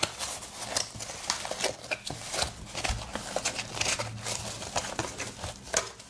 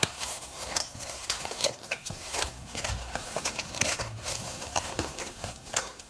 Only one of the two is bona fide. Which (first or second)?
first